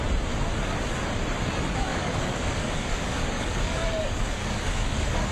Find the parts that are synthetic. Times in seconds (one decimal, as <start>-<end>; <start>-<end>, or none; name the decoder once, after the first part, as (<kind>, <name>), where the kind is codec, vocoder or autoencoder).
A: 1.9-5.3 (codec, DAC)